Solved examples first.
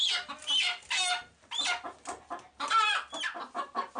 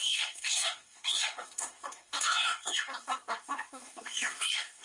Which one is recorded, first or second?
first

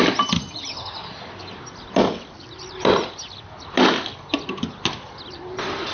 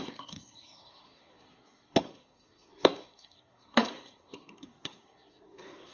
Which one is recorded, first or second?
first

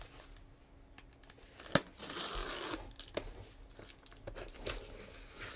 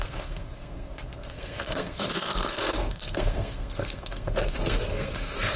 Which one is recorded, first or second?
first